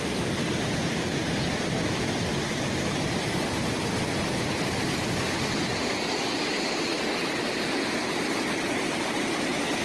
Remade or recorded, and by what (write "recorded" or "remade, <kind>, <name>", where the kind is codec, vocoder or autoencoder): recorded